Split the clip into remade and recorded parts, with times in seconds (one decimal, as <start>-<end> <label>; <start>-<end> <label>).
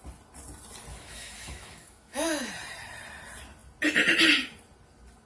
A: 0.0-0.9 recorded; 0.9-2.5 remade; 2.5-5.2 recorded